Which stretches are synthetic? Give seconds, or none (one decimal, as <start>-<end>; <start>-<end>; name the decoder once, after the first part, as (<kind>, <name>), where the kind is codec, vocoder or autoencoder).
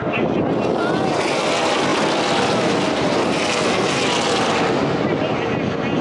none